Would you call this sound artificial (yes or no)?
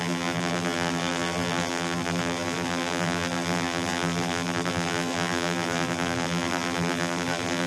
yes